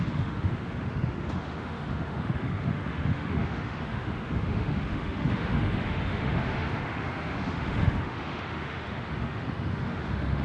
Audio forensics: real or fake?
fake